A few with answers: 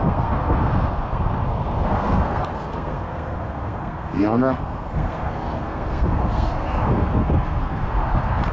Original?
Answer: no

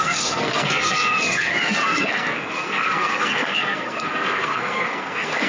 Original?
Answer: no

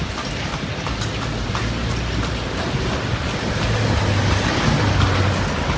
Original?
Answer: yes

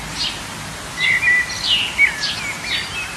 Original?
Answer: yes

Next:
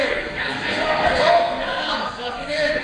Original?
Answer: no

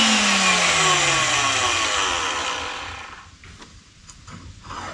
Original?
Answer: yes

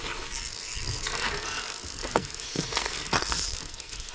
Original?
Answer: no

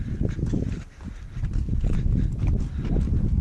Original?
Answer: yes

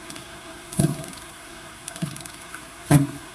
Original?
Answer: no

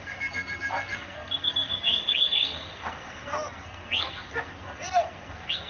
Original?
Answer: no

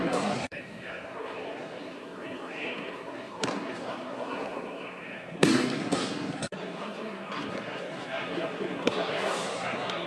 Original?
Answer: no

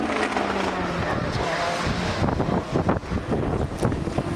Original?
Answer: yes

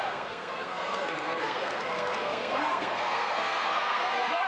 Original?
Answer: no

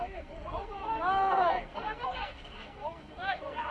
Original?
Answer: no